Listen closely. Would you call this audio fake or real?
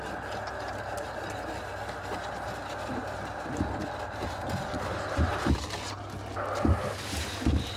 real